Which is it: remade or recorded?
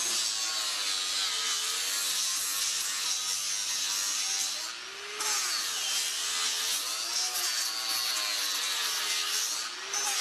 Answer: recorded